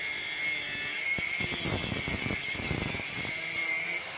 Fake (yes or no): no